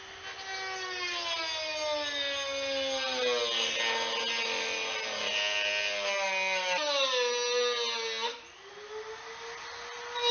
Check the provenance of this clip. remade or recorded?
recorded